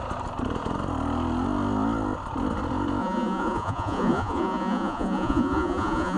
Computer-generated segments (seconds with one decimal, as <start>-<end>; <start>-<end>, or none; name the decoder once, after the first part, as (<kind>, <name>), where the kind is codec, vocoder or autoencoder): 3.0-6.2 (vocoder, Vocos)

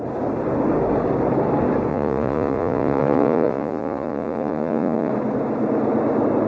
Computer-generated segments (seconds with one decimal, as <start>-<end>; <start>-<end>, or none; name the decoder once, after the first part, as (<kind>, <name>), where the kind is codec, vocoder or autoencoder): 1.9-5.1 (vocoder, Vocos)